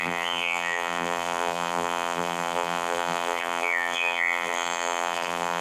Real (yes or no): no